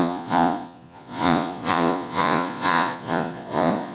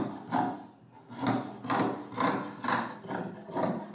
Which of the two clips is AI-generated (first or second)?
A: first